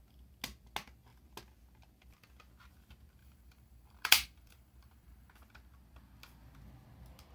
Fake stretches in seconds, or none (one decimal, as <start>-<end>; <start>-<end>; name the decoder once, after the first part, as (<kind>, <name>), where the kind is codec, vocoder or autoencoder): 3.2-5.3 (vocoder, BigVGAN v2)